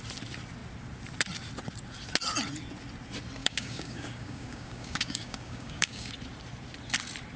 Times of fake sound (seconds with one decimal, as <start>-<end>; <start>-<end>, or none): 3.4-6.1